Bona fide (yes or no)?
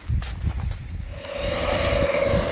no